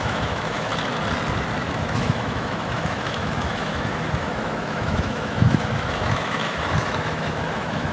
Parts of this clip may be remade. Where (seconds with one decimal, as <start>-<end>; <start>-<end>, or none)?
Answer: 0.0-0.7; 1.6-7.9